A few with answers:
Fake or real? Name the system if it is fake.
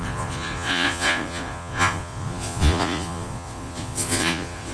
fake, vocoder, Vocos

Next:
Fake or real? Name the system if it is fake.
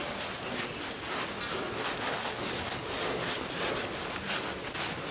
real